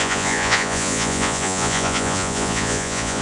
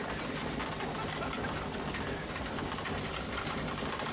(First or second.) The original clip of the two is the second